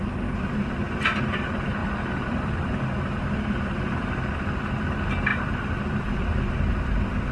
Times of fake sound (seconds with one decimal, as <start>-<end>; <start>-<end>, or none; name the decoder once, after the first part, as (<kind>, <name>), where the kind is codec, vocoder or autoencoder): 1.8-3.3 (vocoder, BigVGAN v2); 5.3-7.3